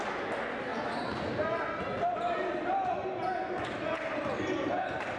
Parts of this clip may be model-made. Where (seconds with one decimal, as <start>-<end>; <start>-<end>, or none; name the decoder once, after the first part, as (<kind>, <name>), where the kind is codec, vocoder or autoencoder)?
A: none